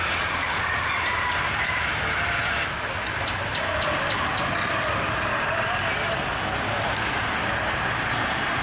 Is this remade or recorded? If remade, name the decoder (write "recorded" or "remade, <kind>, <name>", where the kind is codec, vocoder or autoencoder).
recorded